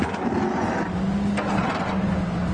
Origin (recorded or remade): recorded